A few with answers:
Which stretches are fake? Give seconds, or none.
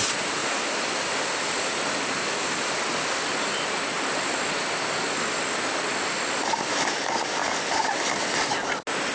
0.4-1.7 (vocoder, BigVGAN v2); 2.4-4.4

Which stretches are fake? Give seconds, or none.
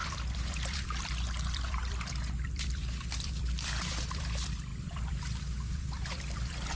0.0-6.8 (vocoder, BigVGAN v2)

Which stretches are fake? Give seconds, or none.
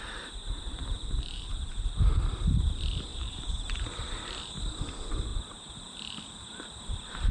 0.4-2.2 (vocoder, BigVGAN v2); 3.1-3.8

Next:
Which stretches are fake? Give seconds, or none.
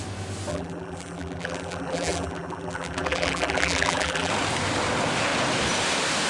0.5-4.3 (vocoder, BigVGAN v2)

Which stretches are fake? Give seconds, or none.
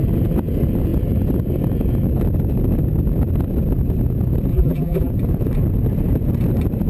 4.5-5.1 (vocoder, BigVGAN v2)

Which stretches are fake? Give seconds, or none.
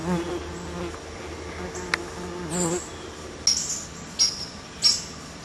none